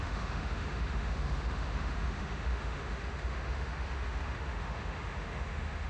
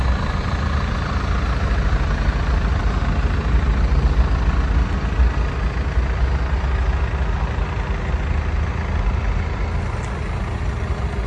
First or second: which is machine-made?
first